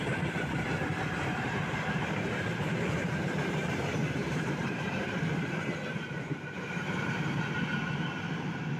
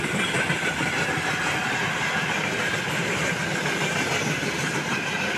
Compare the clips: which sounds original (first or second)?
second